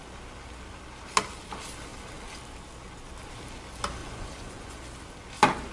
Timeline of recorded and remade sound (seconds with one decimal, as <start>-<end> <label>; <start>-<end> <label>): 0.0-4.0 recorded; 4.0-4.8 remade; 4.8-5.7 recorded